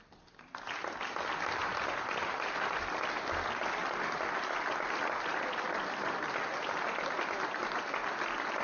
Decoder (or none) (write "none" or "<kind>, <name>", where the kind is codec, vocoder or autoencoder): none